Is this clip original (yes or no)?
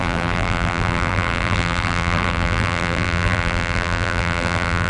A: no